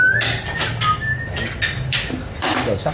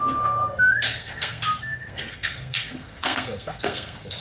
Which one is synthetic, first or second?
second